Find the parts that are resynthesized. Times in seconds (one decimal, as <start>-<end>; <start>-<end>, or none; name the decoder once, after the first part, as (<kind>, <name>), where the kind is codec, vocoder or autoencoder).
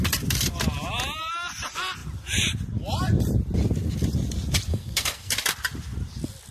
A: 4.7-5.3 (codec, SNAC)